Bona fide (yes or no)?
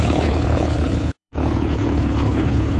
no